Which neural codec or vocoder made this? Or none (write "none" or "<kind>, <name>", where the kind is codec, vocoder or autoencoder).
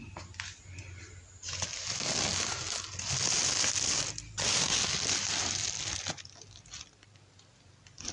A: none